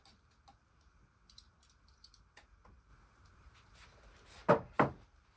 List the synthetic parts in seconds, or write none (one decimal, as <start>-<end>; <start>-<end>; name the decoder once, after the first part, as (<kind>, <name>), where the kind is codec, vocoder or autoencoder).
none